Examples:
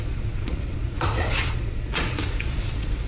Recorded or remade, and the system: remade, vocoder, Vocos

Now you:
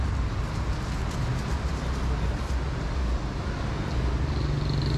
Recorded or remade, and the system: recorded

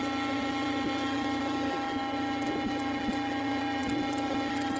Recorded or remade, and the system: recorded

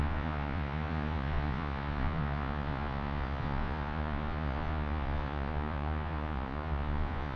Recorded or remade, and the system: remade, vocoder, Vocos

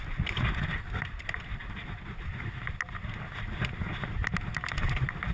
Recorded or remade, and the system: recorded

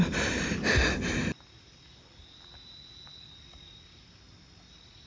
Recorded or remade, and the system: recorded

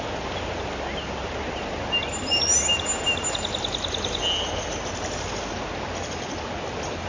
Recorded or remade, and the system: recorded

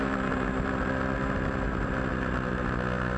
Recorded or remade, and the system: recorded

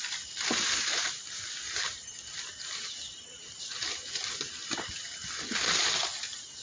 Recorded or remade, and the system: recorded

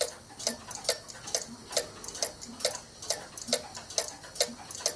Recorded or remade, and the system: recorded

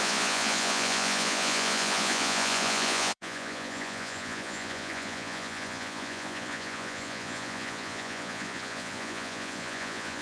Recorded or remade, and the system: remade, vocoder, Vocos